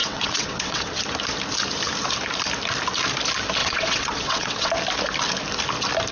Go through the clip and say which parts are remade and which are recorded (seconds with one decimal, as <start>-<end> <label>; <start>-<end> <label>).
0.0-1.0 remade; 1.0-3.6 recorded; 3.6-4.7 remade; 4.7-6.1 recorded